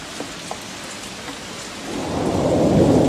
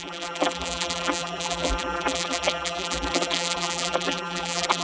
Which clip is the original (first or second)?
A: first